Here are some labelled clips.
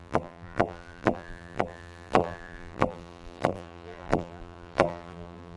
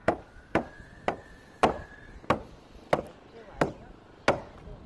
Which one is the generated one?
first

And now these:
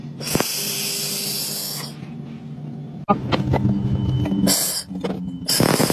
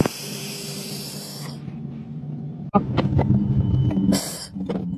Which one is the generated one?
second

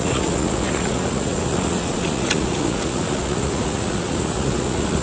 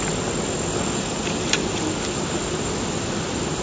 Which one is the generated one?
first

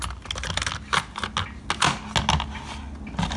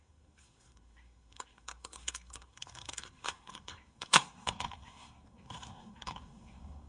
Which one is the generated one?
second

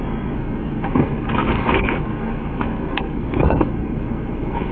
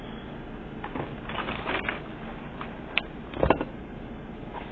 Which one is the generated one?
first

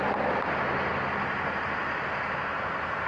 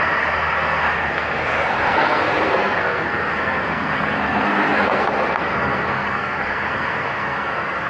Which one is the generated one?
second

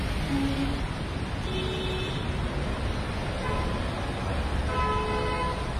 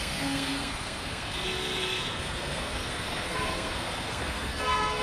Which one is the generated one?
second